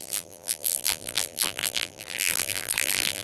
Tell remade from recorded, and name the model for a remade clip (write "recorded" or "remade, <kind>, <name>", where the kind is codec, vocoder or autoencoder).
remade, vocoder, BigVGAN v2